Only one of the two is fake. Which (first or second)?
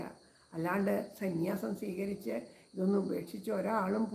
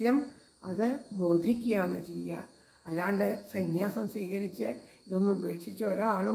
second